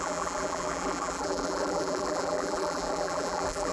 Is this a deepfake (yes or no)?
yes